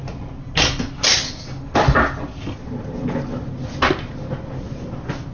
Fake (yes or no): no